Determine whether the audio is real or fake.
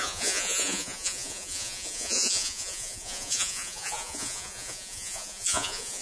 fake